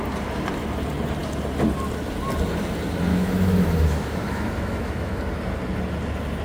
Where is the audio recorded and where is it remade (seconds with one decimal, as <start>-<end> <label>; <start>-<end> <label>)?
0.0-3.1 recorded; 3.1-5.2 remade; 5.2-6.4 recorded